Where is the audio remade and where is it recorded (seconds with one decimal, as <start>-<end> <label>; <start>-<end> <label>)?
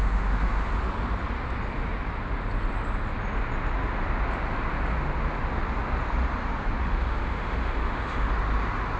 0.0-0.7 remade; 0.7-6.8 recorded; 6.8-8.3 remade; 8.3-9.0 recorded